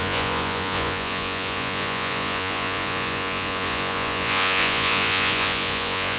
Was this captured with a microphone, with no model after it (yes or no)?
no